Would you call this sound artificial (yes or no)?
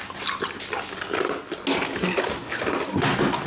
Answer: no